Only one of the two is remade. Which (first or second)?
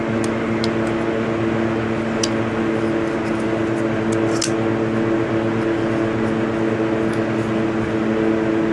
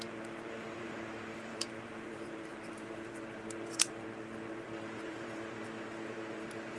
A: second